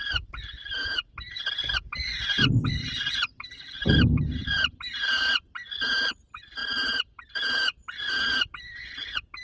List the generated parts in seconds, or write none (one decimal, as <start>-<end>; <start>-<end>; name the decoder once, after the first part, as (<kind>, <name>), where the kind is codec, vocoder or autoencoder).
4.4-5.2 (vocoder, BigVGAN v2)

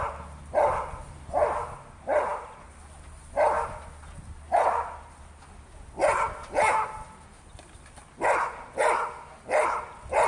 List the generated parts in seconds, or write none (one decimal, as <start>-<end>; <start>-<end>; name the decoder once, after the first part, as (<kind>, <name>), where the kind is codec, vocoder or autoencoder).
none